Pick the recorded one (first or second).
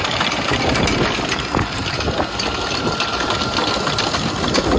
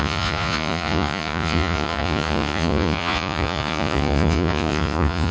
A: first